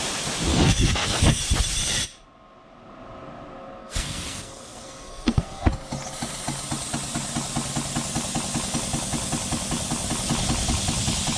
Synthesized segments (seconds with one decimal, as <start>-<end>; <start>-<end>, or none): 0.5-1.4; 3.8-5.7